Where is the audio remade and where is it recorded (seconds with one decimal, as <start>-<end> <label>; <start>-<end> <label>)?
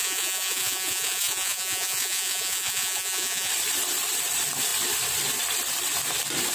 0.0-3.5 remade; 3.5-6.5 recorded